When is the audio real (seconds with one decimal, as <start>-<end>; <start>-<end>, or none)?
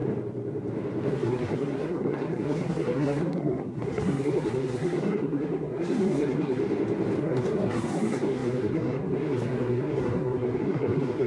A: 0.0-1.1; 6.6-7.2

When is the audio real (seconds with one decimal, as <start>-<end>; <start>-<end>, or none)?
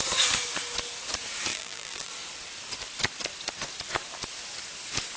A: 0.0-1.5; 2.1-5.2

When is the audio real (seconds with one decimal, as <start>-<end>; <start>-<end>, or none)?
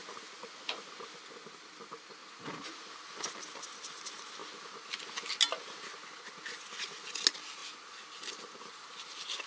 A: 0.9-2.2; 3.0-9.5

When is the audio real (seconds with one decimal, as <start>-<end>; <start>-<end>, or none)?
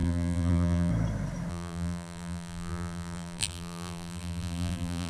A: 0.9-1.5